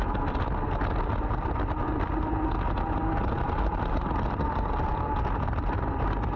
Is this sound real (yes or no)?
yes